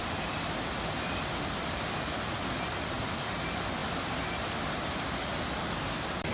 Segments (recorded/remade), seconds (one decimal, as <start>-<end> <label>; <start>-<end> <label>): 0.0-6.3 recorded